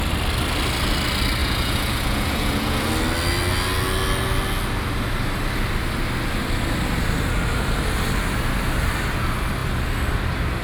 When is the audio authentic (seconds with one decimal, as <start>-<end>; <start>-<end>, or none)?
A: 0.0-1.4; 2.9-10.6